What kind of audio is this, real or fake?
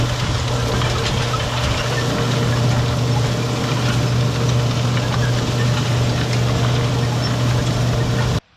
real